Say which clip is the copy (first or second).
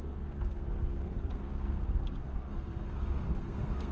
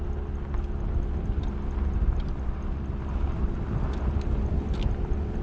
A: first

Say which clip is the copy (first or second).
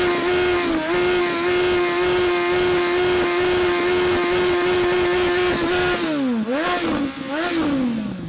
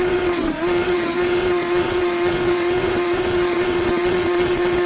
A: second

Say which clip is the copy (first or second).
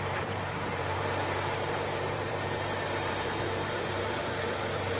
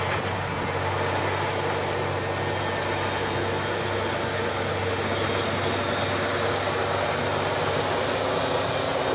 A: first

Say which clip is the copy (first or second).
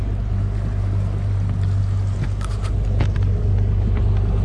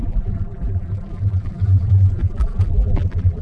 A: second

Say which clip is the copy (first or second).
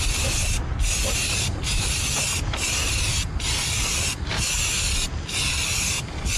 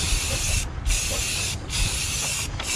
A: second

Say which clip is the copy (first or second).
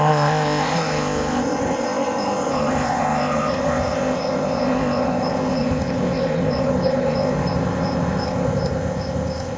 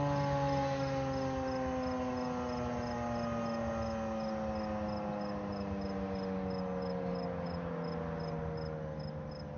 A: first